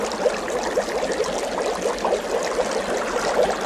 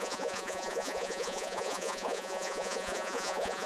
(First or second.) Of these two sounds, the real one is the first